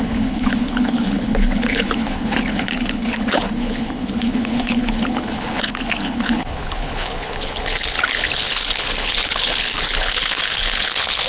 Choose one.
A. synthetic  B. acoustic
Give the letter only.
A